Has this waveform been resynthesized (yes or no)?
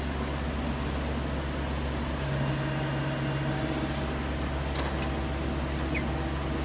no